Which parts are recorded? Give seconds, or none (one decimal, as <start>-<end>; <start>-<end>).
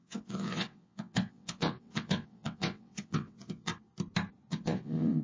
3.7-4.5